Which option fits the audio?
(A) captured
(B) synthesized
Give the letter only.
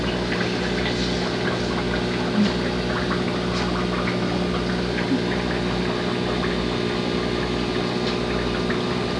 A